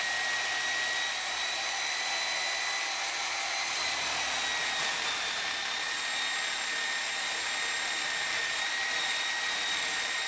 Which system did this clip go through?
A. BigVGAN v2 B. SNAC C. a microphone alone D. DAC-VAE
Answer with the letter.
C